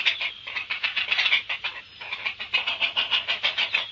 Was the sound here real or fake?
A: real